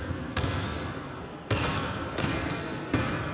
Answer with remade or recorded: remade